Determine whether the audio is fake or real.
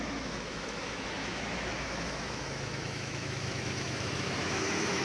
fake